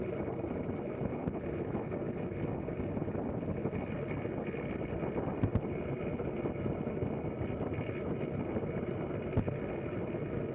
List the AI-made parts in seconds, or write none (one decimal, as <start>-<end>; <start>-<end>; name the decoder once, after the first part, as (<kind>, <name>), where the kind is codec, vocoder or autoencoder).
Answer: 0.0-1.2 (vocoder, BigVGAN v2); 4.5-5.5; 6.6-10.5